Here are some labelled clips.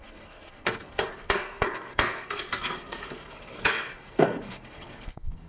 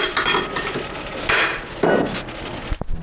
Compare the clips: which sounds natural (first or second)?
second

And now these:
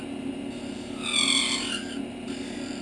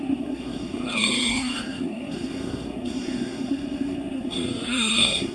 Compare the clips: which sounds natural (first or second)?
first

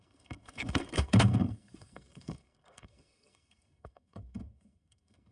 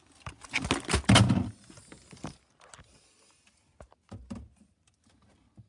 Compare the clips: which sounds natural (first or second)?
second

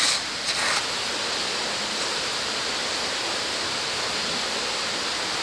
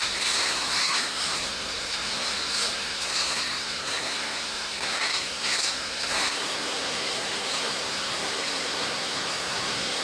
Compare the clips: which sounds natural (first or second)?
first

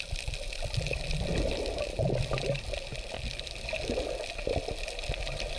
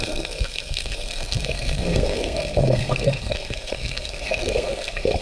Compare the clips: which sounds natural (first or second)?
first